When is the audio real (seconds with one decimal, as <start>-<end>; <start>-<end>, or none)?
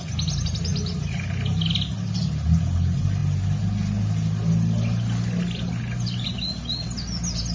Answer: 0.0-7.5